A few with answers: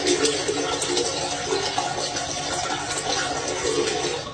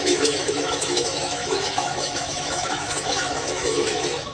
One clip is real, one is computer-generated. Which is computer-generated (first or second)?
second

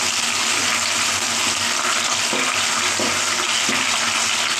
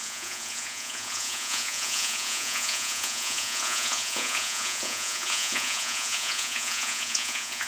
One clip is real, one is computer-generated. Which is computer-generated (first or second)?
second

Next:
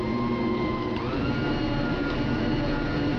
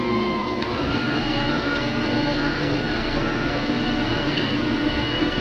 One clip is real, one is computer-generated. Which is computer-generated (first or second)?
second